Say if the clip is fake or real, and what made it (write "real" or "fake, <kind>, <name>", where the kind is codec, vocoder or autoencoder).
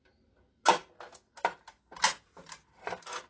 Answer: real